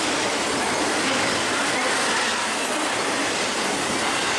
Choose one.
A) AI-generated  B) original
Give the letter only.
B